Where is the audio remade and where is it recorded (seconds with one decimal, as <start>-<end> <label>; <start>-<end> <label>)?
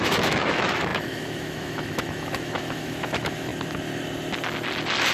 0.0-3.5 remade; 3.5-5.1 recorded